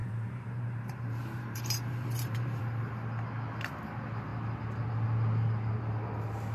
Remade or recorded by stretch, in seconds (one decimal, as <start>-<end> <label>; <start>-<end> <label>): 0.0-2.6 remade; 2.6-6.5 recorded